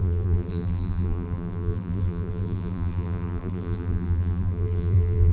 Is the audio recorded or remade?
remade